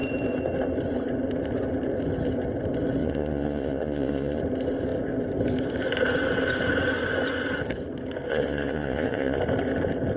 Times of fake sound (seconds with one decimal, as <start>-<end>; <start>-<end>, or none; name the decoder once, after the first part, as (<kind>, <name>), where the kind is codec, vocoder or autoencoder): 3.0-4.4 (vocoder, Vocos); 8.3-9.4